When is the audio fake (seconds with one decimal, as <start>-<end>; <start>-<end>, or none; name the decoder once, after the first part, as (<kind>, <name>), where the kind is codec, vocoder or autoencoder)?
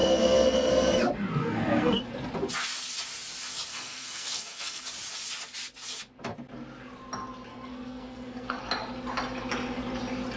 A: 0.0-0.7 (codec, SNAC); 1.4-2.0; 3.7-4.8; 7.5-8.6